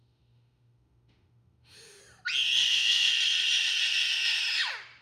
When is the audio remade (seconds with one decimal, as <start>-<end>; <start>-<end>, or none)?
0.0-2.0; 2.7-3.1